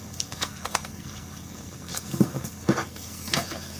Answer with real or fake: fake